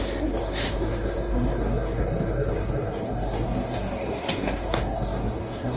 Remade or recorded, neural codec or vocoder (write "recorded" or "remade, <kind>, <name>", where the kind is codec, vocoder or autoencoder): remade, codec, SNAC